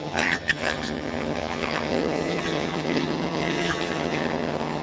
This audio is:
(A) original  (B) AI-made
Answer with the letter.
B